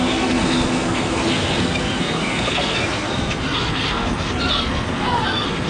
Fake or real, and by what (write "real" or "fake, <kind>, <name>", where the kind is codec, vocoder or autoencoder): fake, codec, SNAC